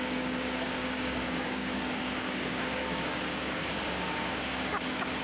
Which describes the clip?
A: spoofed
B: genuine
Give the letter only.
A